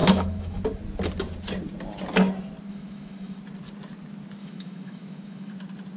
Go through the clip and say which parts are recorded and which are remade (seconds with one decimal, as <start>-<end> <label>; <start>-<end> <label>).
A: 0.0-0.6 remade; 0.6-2.7 recorded; 2.7-3.4 remade; 3.4-4.4 recorded; 4.4-5.5 remade; 5.5-6.0 recorded